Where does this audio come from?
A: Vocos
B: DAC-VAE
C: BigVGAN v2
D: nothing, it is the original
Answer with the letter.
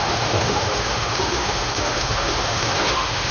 B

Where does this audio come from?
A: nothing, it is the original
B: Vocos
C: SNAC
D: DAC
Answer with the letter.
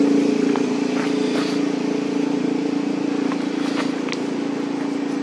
A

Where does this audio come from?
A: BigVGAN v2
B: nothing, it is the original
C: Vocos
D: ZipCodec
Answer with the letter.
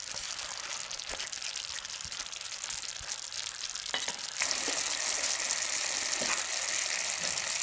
B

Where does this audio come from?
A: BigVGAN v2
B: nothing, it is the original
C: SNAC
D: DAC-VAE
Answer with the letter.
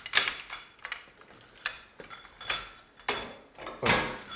B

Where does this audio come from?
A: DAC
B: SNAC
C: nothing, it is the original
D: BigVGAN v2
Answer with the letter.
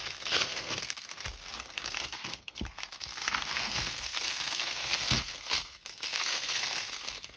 B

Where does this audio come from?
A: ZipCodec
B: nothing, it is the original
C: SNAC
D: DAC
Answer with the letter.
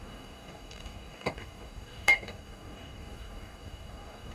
D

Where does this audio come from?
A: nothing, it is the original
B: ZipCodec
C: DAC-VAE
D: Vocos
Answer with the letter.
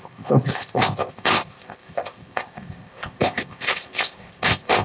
B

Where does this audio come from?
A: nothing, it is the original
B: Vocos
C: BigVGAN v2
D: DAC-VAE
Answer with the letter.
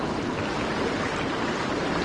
A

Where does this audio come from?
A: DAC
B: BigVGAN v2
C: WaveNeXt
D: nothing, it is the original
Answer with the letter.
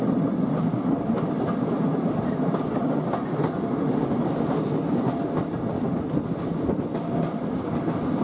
D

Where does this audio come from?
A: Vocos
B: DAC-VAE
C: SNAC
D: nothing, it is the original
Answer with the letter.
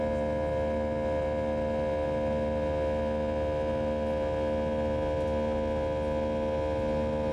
D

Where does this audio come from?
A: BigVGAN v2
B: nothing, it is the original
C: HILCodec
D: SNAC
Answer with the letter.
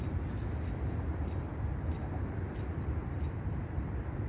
B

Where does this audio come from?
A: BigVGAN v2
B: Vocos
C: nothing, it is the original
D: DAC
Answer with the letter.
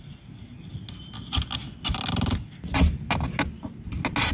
C